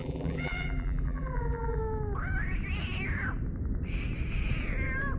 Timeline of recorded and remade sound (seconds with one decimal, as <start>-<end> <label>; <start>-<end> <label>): 0.0-1.8 remade; 1.8-5.2 recorded